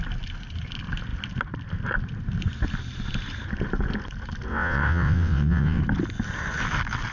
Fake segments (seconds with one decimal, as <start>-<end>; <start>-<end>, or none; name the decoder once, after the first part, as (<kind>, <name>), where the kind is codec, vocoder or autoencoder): 4.5-5.8 (vocoder, WaveNeXt)